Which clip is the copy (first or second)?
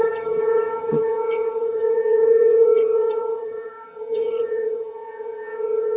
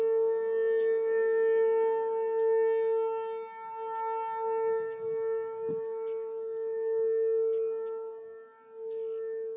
first